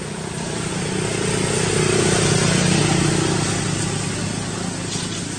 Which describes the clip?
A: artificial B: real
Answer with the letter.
B